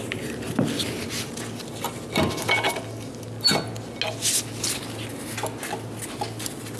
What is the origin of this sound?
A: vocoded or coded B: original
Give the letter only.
B